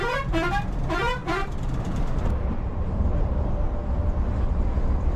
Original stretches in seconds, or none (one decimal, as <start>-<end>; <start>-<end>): 0.0-1.2; 3.3-5.2